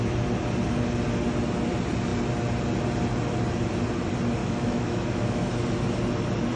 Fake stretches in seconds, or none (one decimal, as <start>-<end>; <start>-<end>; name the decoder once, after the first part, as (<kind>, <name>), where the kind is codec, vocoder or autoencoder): 4.4-5.5 (autoencoder, DAC-VAE)